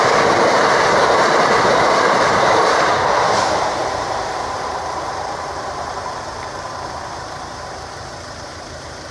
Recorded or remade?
remade